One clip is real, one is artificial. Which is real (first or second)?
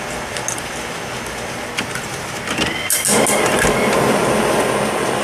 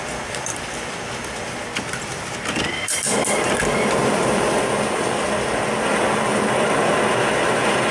first